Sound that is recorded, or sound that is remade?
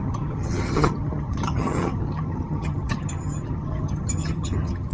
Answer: remade